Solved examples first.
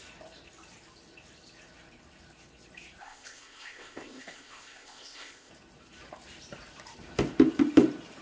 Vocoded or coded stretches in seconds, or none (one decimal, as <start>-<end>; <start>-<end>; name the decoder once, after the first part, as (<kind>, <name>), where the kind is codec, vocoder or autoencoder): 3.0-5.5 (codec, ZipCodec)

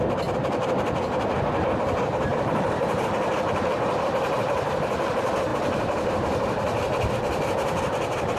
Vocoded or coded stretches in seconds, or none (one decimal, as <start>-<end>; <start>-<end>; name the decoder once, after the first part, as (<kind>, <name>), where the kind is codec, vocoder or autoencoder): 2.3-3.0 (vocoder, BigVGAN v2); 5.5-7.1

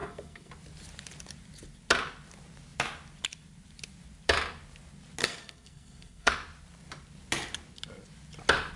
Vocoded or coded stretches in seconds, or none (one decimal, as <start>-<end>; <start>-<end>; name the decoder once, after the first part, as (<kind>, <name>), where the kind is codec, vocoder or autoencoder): 0.0-0.5 (codec, SNAC); 5.2-6.3

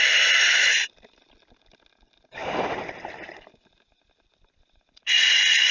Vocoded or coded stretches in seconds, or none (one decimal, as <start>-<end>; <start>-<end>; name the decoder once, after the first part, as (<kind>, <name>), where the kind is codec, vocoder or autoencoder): none

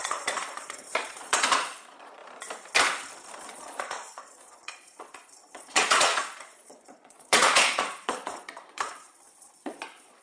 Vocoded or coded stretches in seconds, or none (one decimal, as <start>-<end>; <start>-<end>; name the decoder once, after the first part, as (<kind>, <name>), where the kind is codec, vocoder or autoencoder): 0.0-2.2 (vocoder, Vocos); 3.4-10.2

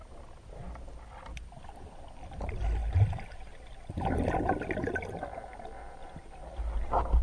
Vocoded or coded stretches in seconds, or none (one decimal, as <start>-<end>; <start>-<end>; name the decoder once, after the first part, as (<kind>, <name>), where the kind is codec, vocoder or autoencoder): 0.0-1.5 (vocoder, BigVGAN v2)

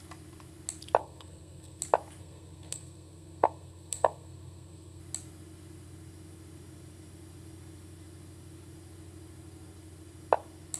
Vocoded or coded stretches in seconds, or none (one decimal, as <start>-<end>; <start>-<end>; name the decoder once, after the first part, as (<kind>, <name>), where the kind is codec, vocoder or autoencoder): 1.0-1.8 (codec, SNAC); 2.2-5.0

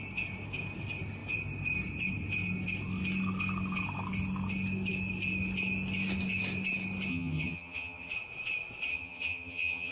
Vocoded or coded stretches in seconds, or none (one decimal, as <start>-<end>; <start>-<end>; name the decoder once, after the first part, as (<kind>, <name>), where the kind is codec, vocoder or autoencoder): 7.1-8.1 (vocoder, HiFi-GAN); 8.9-9.9